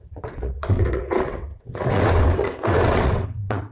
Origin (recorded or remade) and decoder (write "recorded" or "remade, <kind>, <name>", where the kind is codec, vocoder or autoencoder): remade, vocoder, WaveNeXt